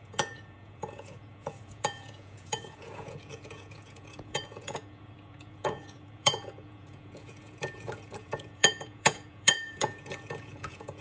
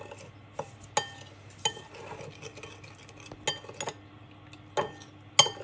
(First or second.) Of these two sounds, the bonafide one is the second